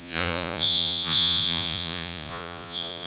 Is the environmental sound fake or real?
fake